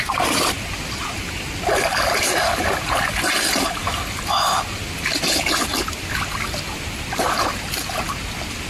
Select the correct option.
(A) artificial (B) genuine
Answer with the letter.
B